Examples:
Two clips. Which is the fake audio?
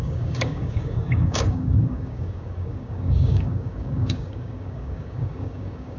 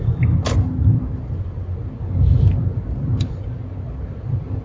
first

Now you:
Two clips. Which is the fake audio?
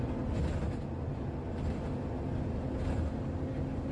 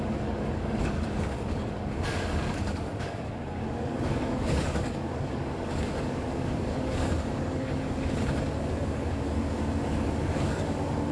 second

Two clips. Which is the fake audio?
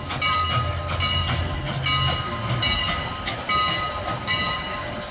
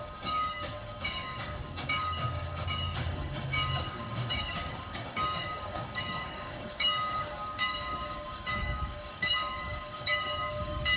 second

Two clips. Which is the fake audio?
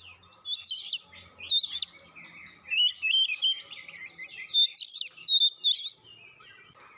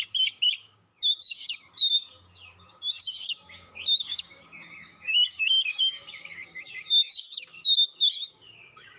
second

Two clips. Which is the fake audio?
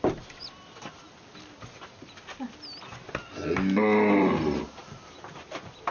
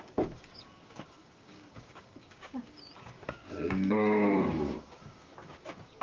second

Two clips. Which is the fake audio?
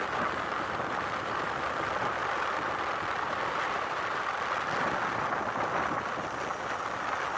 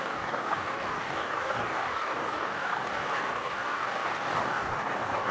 second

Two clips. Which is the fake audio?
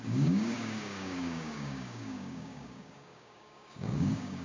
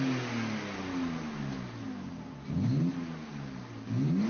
first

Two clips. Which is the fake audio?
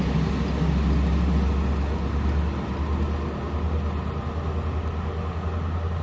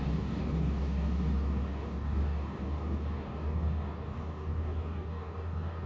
second